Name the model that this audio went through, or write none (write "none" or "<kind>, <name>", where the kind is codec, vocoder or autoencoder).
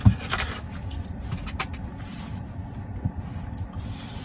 none